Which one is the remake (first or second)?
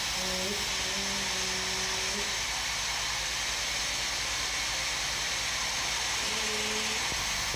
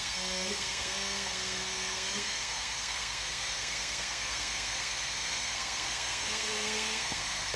second